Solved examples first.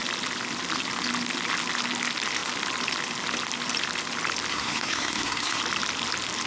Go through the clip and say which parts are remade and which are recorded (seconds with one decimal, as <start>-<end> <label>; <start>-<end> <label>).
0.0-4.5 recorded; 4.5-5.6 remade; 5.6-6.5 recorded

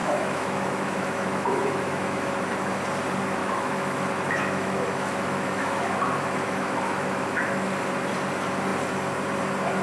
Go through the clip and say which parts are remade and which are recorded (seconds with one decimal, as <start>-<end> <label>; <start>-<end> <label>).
0.0-2.3 remade; 2.3-3.4 recorded; 3.4-7.7 remade; 7.7-9.8 recorded

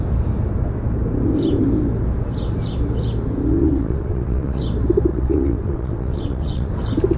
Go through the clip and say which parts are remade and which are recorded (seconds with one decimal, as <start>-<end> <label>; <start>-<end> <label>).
0.0-3.6 recorded; 3.6-4.6 remade; 4.6-5.1 recorded; 5.1-6.7 remade; 6.7-7.2 recorded

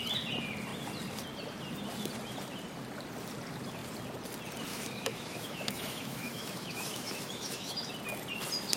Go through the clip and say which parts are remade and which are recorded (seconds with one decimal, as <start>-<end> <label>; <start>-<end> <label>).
0.0-4.7 recorded; 4.7-7.9 remade; 7.9-8.8 recorded